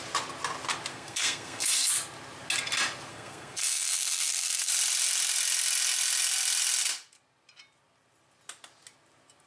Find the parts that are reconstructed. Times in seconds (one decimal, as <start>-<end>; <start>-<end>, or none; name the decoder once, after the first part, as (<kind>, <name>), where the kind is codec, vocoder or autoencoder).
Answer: 0.9-1.9 (codec, SNAC); 3.1-4.7